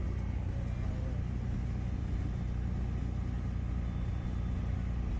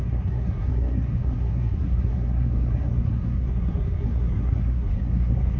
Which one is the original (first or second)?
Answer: first